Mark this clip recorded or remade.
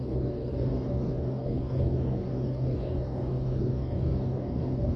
remade